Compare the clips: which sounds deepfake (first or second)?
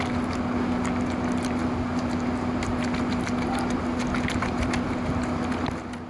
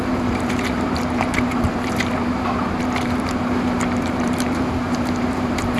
second